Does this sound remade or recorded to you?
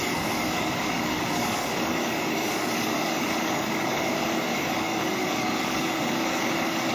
remade